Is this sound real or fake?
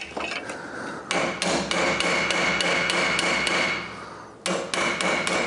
real